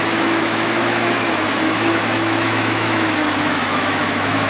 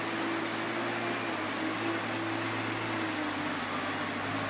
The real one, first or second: second